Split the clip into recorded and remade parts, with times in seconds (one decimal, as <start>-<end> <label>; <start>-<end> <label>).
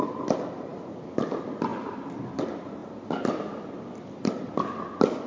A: 0.0-2.8 remade; 2.8-3.7 recorded; 3.7-5.3 remade